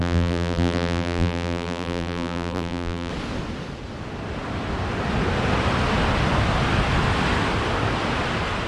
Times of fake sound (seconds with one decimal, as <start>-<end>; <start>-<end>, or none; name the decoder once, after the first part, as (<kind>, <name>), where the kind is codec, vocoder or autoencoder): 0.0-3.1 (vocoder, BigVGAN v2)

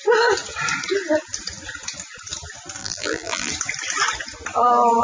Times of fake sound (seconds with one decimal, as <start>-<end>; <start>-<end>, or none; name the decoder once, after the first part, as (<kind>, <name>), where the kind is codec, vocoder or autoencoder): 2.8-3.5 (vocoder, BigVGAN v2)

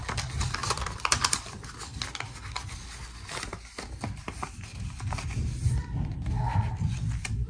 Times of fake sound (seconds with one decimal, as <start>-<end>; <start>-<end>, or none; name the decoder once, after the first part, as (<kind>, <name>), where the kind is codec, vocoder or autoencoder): none